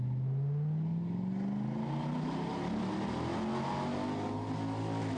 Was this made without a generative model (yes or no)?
yes